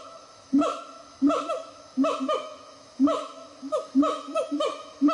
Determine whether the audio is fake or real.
fake